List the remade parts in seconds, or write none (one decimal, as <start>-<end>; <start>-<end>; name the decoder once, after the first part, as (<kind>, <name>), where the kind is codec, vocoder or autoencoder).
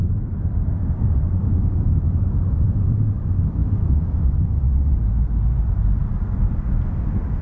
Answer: 1.4-2.2 (autoencoder, DAC-VAE); 3.6-4.9